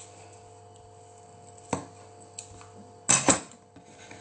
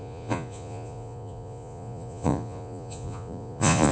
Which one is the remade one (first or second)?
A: second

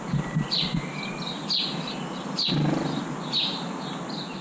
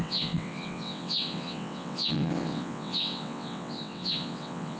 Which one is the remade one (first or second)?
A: second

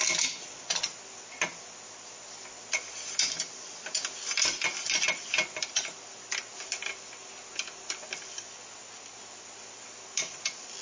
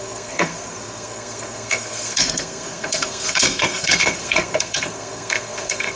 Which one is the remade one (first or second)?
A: second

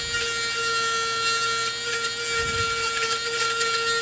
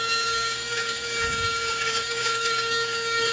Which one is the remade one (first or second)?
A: second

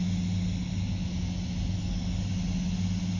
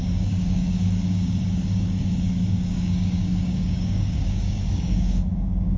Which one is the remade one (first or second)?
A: second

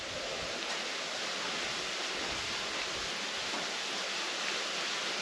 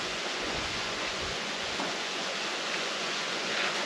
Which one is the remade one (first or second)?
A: second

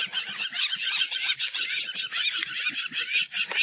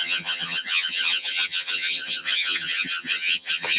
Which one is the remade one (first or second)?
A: second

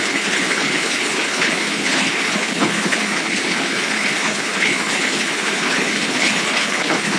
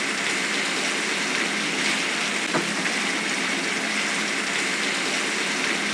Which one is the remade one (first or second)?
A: first